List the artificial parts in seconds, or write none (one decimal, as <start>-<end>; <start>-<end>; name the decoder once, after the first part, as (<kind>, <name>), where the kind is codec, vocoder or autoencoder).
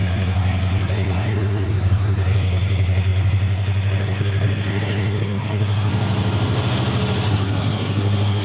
0.0-5.9 (codec, SNAC); 7.3-8.4